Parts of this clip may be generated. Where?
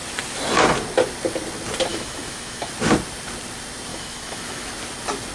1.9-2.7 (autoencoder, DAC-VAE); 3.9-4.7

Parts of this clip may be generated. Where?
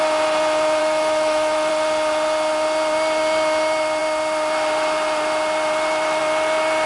0.8-1.7 (autoencoder, DAC-VAE)